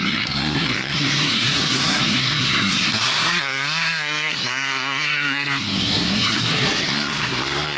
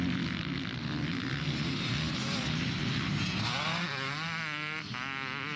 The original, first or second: second